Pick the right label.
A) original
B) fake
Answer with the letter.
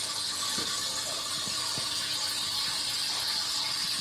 A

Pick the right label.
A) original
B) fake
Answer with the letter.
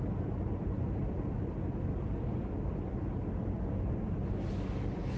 A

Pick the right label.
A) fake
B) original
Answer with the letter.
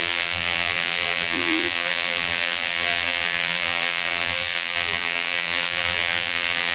A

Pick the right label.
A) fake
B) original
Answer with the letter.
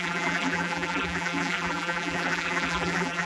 A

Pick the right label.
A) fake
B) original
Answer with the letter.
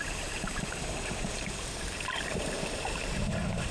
A